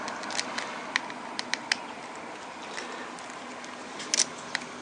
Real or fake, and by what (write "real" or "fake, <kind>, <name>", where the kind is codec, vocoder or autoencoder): real